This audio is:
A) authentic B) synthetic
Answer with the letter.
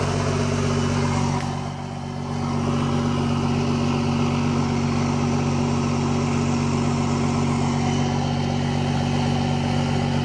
A